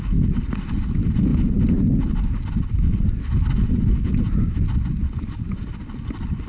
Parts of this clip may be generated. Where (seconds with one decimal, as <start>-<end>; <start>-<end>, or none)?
none

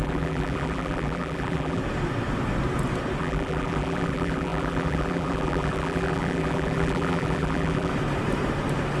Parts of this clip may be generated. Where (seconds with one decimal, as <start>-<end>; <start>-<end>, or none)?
0.0-1.8; 3.2-7.9

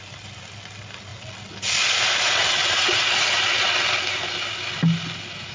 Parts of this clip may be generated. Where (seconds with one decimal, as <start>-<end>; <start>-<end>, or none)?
none

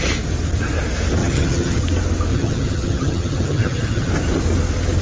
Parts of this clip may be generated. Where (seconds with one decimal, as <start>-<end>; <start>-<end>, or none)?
1.2-1.8; 2.3-4.1

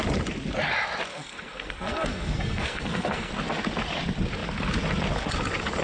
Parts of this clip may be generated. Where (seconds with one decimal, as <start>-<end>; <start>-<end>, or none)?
1.1-3.3

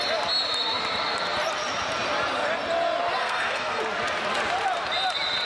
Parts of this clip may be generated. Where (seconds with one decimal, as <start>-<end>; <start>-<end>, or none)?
3.2-3.8